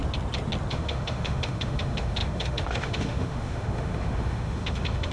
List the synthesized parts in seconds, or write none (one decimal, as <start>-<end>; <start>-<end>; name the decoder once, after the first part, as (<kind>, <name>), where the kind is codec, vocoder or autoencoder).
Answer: 0.7-5.1 (autoencoder, DAC-VAE)